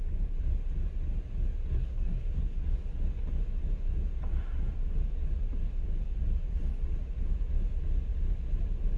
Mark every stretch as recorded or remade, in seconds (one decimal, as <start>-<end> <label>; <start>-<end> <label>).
0.0-1.7 recorded; 1.7-2.7 remade; 2.7-9.0 recorded

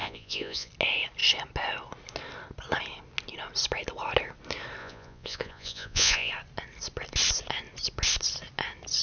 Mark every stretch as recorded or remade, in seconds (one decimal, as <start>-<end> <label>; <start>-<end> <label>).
0.0-0.7 remade; 0.7-4.8 recorded; 4.8-6.3 remade; 6.3-9.0 recorded

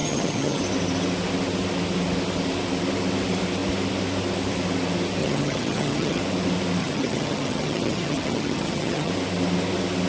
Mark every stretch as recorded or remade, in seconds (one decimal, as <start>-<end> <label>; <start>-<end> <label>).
0.0-0.6 remade; 0.6-5.2 recorded; 5.2-6.2 remade; 6.2-6.8 recorded; 6.8-9.1 remade; 9.1-10.1 recorded

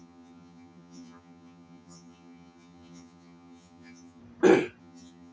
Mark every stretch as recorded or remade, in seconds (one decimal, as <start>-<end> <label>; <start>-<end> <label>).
0.0-4.2 remade; 4.2-4.8 recorded; 4.8-5.3 remade

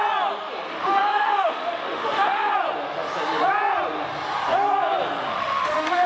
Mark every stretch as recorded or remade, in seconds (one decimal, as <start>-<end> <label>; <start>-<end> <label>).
0.0-0.7 recorded; 0.7-2.5 remade; 2.5-5.3 recorded; 5.3-6.1 remade

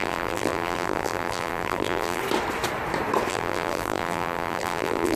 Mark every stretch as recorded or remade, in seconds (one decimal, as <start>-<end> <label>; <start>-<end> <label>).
0.0-2.2 remade; 2.2-3.3 recorded; 3.3-5.2 remade

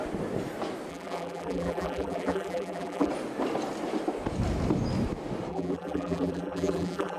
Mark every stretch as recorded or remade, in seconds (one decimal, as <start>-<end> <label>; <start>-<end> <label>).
0.0-0.9 recorded; 0.9-3.1 remade; 3.1-5.5 recorded; 5.5-7.2 remade